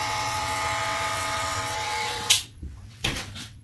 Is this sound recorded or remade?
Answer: remade